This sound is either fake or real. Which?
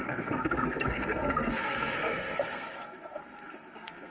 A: fake